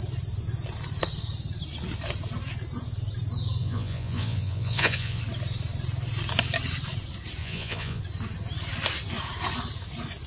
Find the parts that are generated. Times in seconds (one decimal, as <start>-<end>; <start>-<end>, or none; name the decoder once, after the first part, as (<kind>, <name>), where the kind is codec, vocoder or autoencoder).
3.6-5.2 (vocoder, Vocos); 7.4-8.0